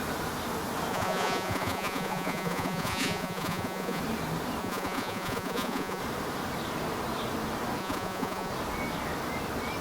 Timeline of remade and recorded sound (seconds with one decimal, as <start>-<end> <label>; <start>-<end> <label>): 0.0-0.9 recorded; 0.9-4.0 remade; 4.0-4.6 recorded; 4.6-6.0 remade; 6.0-7.8 recorded; 7.8-8.5 remade; 8.5-9.8 recorded